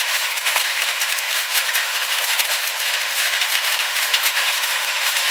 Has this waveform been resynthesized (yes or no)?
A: yes